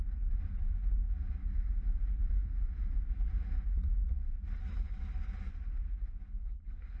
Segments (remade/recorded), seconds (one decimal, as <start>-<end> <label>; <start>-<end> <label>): 0.0-6.4 recorded; 6.4-7.0 remade